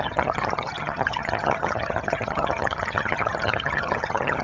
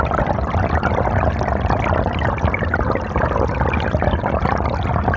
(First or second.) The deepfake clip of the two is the first